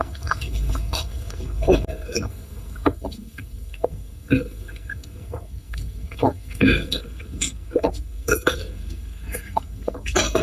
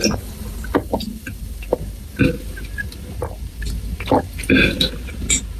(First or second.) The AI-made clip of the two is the first